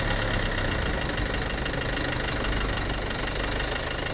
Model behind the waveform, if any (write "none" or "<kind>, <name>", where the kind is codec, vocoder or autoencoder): none